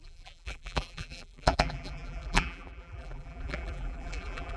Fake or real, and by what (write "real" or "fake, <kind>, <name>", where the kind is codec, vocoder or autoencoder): fake, vocoder, BigVGAN v2